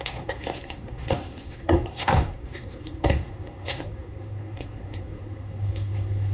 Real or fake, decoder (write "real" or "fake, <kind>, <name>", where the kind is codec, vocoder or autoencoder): fake, codec, SNAC